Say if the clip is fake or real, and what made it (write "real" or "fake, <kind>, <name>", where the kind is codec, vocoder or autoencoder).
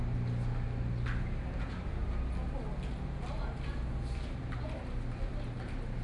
real